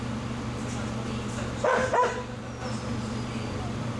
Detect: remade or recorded recorded